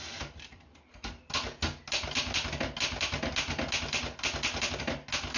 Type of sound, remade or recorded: recorded